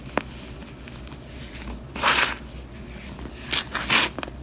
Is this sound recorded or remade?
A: recorded